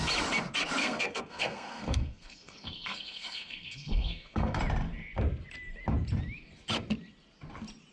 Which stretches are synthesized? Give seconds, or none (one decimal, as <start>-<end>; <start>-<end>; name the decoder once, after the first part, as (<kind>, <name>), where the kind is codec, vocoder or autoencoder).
0.8-4.6 (codec, SNAC)